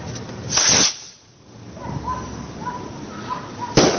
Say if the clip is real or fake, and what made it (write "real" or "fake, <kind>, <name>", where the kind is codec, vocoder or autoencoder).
real